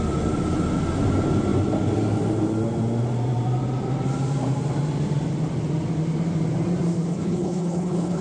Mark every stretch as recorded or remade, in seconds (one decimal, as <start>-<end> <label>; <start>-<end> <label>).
0.0-7.1 recorded; 7.1-8.2 remade